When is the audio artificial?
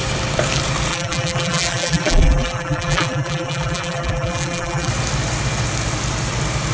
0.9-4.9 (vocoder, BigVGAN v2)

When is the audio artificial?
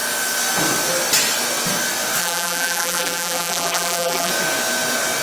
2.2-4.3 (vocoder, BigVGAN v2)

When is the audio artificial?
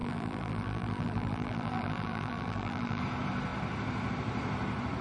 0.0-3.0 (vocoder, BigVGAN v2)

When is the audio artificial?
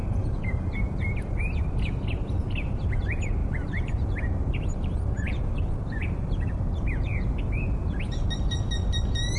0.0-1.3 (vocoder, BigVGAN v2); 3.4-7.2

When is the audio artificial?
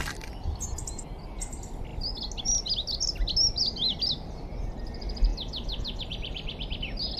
none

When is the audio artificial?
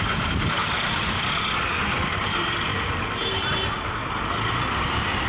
0.6-1.3 (vocoder, BigVGAN v2); 1.8-2.3; 2.7-4.3